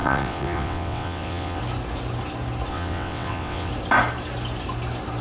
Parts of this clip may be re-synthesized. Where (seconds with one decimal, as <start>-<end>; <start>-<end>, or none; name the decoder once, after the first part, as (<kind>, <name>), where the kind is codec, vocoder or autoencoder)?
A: 0.0-1.6 (vocoder, WaveNeXt); 2.7-3.7